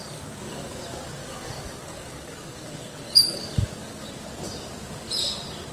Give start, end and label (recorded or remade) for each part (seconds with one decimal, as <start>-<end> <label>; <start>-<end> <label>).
0.0-0.7 remade; 0.7-1.2 recorded; 1.2-4.0 remade; 4.0-5.7 recorded